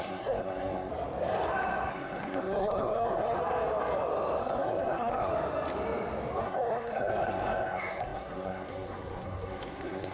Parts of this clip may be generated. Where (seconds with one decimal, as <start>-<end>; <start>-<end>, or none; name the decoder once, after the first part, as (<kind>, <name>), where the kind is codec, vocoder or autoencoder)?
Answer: 0.0-0.9 (codec, SNAC); 1.9-3.4; 4.4-5.3; 6.4-10.1